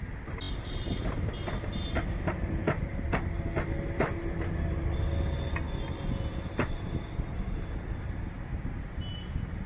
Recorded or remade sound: recorded